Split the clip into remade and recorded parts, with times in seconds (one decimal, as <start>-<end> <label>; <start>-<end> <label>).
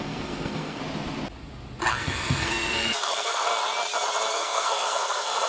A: 0.0-0.8 remade; 0.8-1.9 recorded; 1.9-3.5 remade; 3.5-4.3 recorded; 4.3-5.5 remade